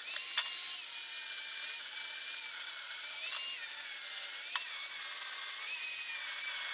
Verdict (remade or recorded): recorded